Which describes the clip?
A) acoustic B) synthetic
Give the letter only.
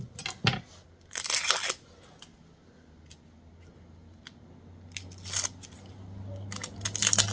A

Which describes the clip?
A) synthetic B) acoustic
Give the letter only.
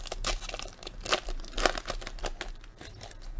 B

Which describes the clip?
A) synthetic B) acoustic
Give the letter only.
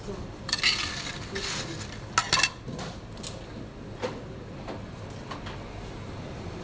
B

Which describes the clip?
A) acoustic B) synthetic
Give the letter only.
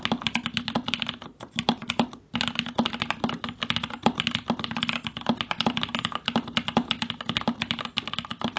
A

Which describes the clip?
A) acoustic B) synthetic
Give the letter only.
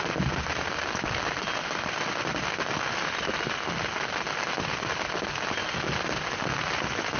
A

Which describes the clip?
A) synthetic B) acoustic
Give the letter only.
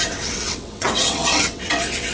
A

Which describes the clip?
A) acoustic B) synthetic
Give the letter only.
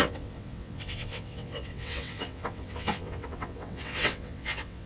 B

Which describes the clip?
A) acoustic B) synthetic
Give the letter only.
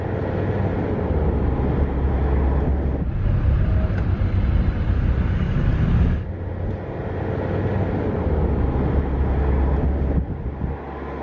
A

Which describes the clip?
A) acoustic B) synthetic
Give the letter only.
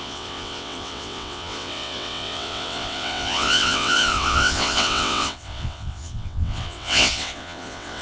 B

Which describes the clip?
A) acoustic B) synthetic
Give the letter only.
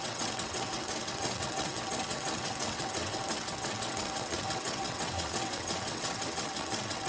B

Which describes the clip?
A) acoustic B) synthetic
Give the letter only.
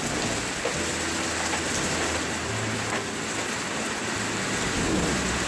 A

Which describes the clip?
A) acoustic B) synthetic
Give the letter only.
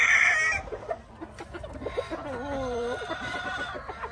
A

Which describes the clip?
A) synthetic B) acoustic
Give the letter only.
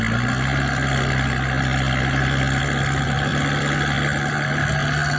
B